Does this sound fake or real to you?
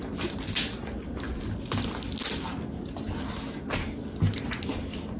real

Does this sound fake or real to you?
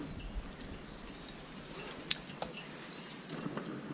real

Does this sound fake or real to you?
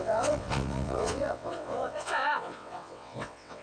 fake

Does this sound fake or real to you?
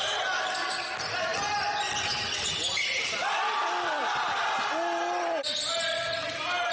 real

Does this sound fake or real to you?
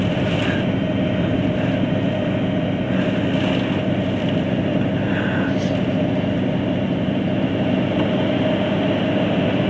real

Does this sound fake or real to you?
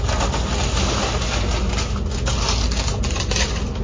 real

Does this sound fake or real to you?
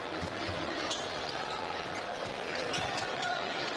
fake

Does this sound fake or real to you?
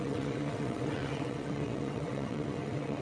fake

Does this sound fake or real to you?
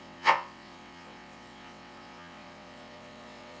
fake